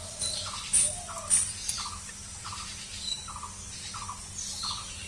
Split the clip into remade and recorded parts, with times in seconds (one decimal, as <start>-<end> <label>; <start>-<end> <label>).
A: 0.0-5.1 recorded